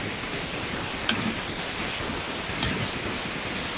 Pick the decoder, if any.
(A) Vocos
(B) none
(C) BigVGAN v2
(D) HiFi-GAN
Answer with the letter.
B